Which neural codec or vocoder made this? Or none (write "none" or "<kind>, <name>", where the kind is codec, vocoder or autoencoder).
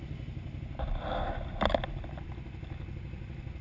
none